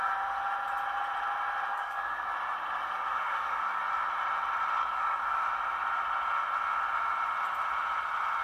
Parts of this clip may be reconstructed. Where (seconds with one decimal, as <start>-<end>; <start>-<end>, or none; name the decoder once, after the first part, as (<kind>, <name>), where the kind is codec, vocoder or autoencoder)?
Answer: 1.7-2.3 (codec, DAC); 3.1-3.8; 4.8-5.4